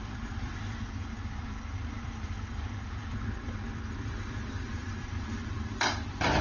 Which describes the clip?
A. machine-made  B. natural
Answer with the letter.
A